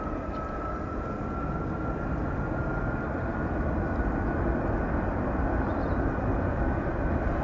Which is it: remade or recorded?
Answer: recorded